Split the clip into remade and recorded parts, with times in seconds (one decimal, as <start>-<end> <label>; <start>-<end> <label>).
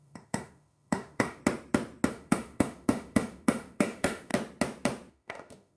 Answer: 0.0-1.4 remade; 1.4-2.1 recorded; 2.1-4.3 remade; 4.3-5.1 recorded; 5.1-5.8 remade